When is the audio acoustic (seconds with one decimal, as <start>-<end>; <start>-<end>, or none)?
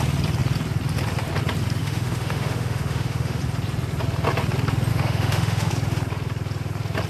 0.0-1.8; 3.4-4.9; 5.7-7.1